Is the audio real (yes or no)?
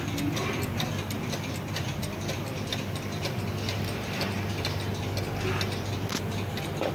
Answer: yes